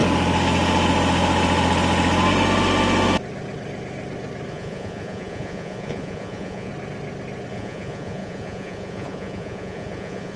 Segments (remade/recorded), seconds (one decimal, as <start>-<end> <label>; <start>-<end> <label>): 0.0-4.5 recorded; 4.5-6.7 remade; 6.7-7.5 recorded; 7.5-10.4 remade